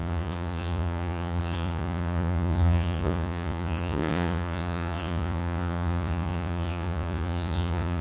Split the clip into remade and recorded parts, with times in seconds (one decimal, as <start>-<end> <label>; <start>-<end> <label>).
0.0-8.0 remade